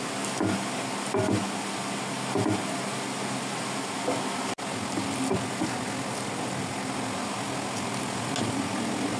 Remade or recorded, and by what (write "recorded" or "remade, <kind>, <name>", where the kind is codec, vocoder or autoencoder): recorded